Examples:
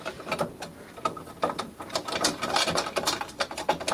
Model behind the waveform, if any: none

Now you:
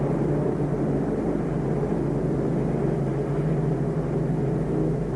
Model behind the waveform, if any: none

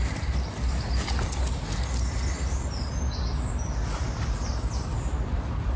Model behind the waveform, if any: none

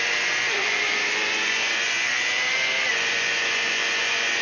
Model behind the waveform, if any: vocoder, Vocos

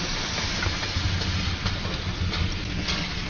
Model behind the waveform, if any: none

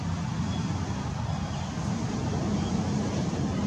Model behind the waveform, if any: none